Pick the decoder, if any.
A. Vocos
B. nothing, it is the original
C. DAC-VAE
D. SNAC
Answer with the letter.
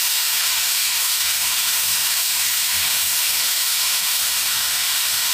C